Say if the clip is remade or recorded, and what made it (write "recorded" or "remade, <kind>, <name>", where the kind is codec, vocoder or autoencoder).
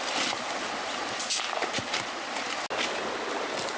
recorded